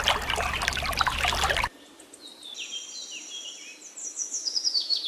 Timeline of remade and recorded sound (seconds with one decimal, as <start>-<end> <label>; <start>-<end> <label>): 0.0-4.0 recorded; 4.0-5.1 remade